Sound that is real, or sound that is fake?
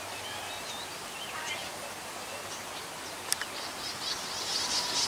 real